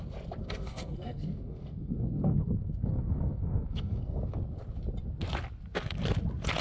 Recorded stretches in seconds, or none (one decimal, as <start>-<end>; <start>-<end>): 0.0-0.4; 4.3-6.6

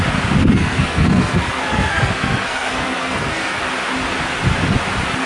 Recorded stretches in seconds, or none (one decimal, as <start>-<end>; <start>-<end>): 0.0-0.4; 3.6-5.3

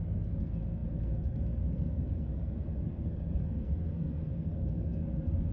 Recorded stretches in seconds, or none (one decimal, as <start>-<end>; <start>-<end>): none

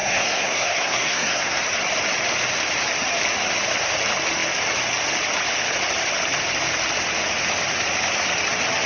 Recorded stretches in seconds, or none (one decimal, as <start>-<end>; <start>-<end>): 1.6-8.9

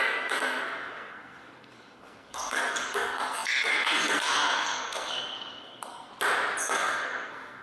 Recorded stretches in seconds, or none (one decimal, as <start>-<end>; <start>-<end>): 6.1-6.6

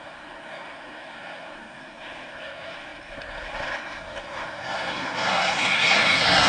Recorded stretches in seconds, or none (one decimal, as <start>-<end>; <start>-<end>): none

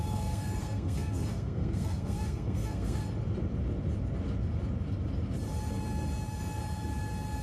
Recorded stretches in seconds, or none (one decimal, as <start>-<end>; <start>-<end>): 3.0-7.4